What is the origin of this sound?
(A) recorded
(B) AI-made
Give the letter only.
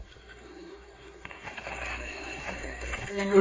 B